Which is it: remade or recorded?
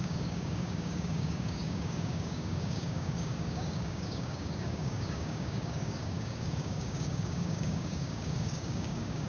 remade